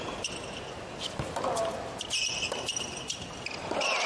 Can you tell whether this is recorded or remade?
recorded